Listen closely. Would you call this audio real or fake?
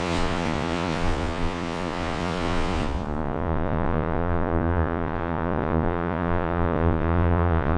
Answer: fake